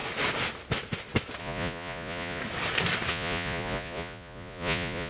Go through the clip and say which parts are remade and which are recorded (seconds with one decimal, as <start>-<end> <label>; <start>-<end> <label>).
0.0-1.4 recorded; 1.4-2.4 remade; 2.4-3.1 recorded; 3.1-5.1 remade

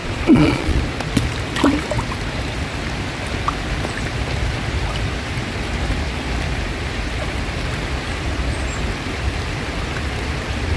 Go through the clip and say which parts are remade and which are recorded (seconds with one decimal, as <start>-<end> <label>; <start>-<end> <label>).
0.0-0.8 remade; 0.8-10.8 recorded

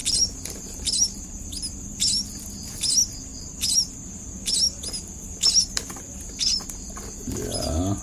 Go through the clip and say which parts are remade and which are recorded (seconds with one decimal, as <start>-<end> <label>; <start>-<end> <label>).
0.0-0.8 remade; 0.8-3.3 recorded; 3.3-4.3 remade; 4.3-8.0 recorded

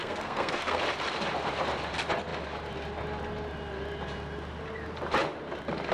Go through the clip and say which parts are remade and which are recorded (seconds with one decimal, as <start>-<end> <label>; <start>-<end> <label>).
0.0-0.8 remade; 0.8-5.9 recorded

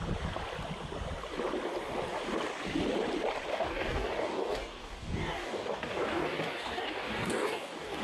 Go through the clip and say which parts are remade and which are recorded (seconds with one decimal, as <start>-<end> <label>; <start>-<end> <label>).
0.0-3.5 recorded; 3.5-8.0 remade

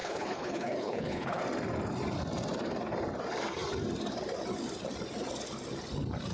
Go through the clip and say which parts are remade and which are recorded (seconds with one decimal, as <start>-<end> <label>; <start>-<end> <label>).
0.0-1.4 remade; 1.4-6.3 recorded

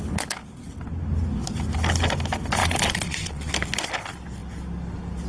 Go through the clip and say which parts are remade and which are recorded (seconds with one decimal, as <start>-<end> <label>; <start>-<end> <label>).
0.0-2.6 recorded; 2.6-3.5 remade; 3.5-5.3 recorded